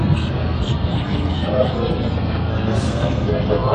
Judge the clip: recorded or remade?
remade